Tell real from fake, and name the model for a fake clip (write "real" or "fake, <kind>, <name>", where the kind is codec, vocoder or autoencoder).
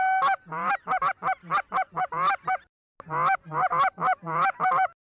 real